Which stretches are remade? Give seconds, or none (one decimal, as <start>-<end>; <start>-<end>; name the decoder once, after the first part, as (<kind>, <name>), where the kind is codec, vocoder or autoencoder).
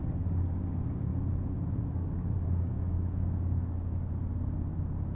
1.1-4.2 (codec, DAC)